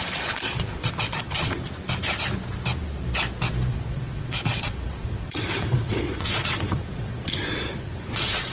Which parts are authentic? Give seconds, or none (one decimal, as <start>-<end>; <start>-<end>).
1.6-3.7